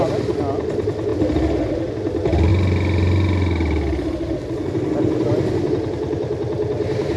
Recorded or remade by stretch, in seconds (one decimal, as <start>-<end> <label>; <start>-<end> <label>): 0.0-7.2 recorded